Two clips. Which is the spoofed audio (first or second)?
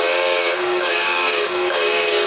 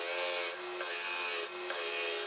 first